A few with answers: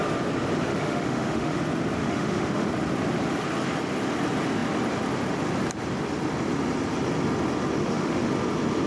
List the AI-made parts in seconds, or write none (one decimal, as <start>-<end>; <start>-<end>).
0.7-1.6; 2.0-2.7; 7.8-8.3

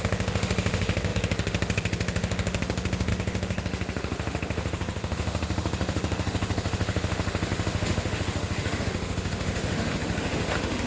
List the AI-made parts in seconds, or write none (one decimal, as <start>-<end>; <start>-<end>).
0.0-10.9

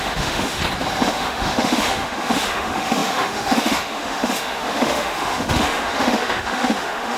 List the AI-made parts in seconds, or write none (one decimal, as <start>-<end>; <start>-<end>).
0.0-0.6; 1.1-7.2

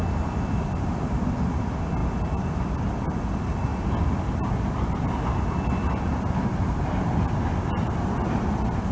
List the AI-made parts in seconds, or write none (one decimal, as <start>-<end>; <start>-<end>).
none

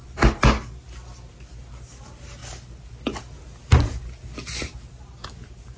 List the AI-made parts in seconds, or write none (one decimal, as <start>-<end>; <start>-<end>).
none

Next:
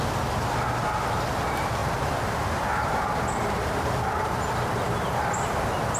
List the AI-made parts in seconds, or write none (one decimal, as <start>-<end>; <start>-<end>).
none